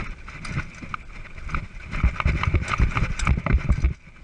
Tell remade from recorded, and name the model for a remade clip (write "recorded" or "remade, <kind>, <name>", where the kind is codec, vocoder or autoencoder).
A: recorded